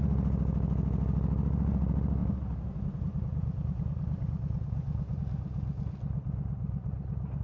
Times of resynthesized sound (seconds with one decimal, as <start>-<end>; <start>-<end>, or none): 2.2-5.2